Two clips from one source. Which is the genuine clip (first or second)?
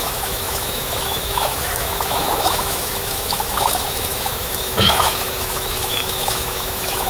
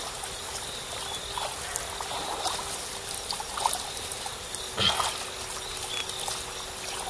second